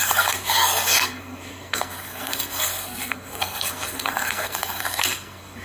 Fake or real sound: fake